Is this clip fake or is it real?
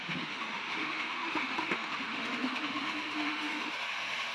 fake